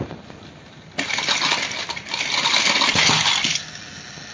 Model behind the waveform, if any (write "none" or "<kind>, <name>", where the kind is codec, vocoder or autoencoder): none